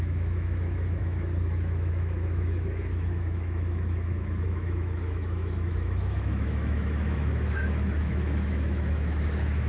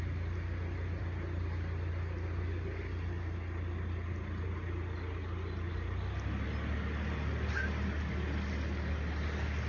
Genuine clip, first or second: second